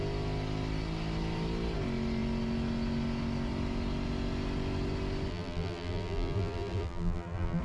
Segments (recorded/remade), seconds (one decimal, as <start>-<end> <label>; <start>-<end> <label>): 0.0-5.3 recorded; 5.3-7.6 remade

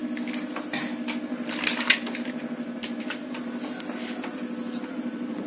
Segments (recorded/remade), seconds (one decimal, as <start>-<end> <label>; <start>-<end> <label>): 0.0-3.0 recorded; 3.0-3.4 remade; 3.4-5.0 recorded; 5.0-5.5 remade